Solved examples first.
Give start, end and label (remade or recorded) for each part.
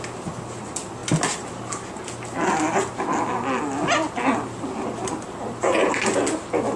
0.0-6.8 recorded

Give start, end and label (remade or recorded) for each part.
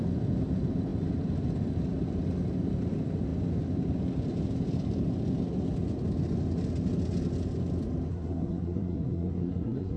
0.0-8.1 recorded; 8.1-10.0 remade